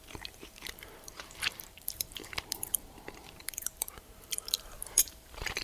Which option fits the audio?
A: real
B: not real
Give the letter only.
B